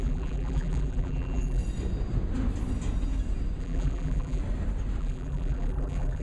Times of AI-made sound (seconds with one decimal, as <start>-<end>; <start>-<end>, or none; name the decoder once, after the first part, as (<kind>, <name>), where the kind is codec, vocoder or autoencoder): 0.0-1.6 (vocoder, BigVGAN v2); 3.6-4.4; 5.0-6.2